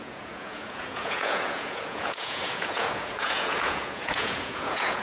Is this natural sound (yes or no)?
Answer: no